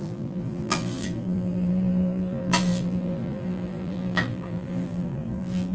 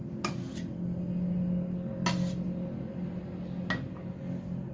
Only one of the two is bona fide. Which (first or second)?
second